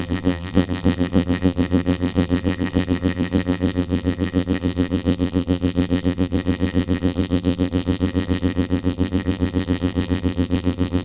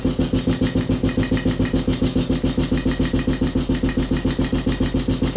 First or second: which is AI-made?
first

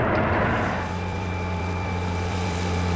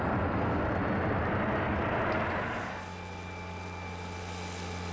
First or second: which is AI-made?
first